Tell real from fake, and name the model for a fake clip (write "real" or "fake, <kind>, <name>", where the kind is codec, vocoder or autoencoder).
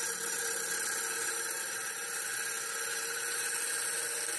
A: real